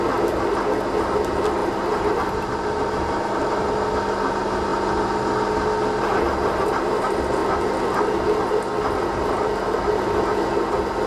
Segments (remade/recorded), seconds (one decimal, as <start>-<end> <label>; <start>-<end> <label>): 0.0-1.6 recorded; 1.6-3.7 remade; 3.7-11.1 recorded